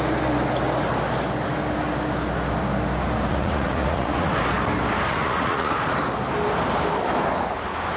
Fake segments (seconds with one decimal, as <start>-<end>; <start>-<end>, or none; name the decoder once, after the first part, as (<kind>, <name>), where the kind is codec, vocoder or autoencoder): 3.3-4.4 (vocoder, Vocos); 5.1-5.7